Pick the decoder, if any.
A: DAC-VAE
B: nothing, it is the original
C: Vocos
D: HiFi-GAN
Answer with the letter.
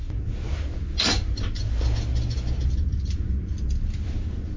B